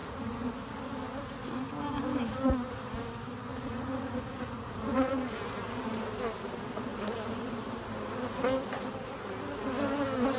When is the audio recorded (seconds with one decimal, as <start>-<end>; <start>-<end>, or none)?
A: 0.5-3.5; 5.4-10.4